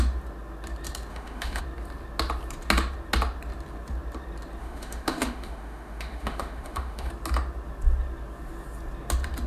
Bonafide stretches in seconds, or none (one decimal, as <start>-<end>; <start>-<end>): 0.0-1.1; 1.6-4.6; 7.1-9.5